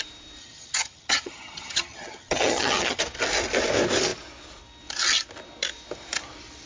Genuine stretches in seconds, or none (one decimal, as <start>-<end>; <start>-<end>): 0.0-0.4; 3.0-6.7